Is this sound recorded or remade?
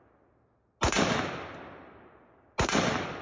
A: recorded